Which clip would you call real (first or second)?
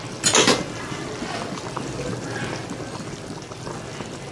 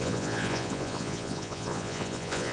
first